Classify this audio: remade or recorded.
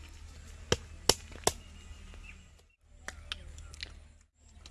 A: recorded